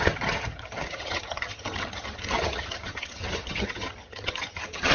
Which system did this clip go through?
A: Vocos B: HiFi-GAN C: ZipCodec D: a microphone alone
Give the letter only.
B